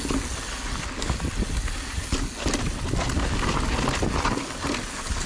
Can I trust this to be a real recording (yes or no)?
yes